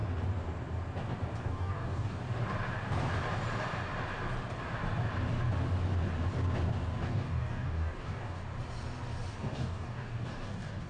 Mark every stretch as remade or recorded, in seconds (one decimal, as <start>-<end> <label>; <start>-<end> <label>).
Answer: 0.0-1.4 recorded; 1.4-2.2 remade; 2.2-7.1 recorded; 7.1-8.4 remade; 8.4-9.4 recorded; 9.4-10.9 remade